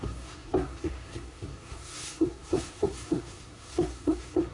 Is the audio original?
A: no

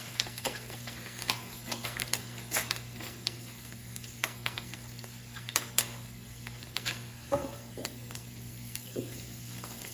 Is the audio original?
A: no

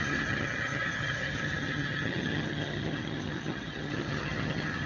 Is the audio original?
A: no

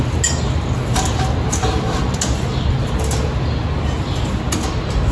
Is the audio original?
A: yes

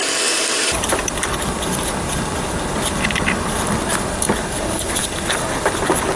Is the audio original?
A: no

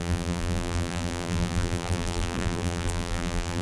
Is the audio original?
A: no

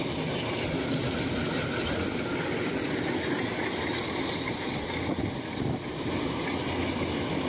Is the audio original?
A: yes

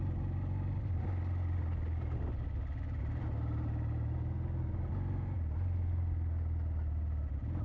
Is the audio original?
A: yes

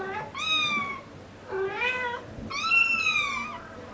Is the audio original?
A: yes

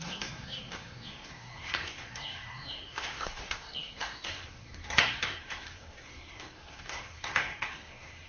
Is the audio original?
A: no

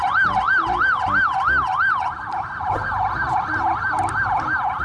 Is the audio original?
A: no